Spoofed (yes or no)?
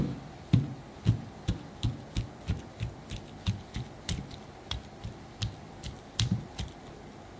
no